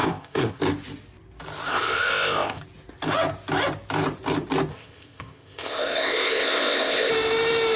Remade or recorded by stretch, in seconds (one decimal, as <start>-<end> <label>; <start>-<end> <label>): 0.0-0.6 remade; 0.6-1.7 recorded; 1.7-2.6 remade; 2.6-4.7 recorded; 4.7-7.1 remade; 7.1-7.8 recorded